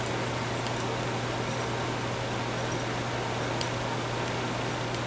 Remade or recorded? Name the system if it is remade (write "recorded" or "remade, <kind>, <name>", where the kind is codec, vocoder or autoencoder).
recorded